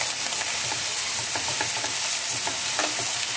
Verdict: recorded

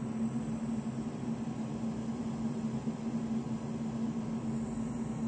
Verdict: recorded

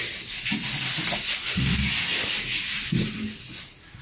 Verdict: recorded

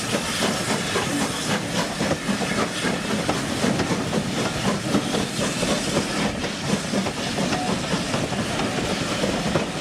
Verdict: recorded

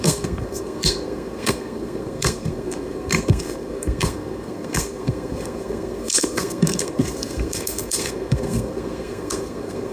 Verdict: remade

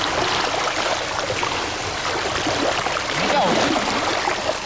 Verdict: recorded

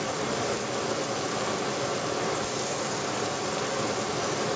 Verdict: recorded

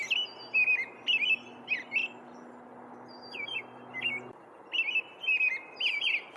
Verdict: recorded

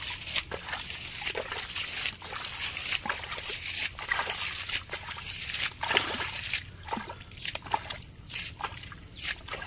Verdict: recorded